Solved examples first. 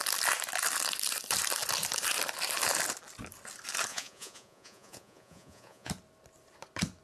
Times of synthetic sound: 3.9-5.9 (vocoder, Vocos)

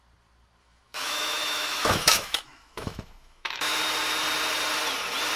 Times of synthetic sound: 0.6-3.8 (autoencoder, DAC-VAE)